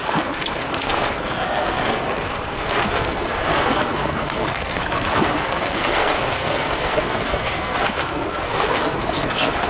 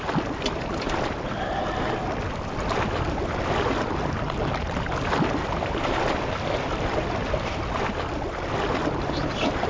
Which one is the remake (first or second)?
first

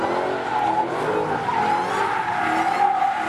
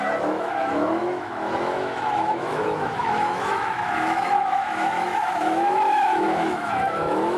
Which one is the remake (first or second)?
second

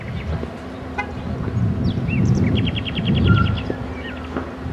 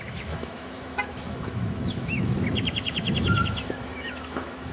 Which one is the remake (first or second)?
second